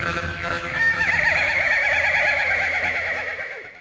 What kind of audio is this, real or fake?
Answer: fake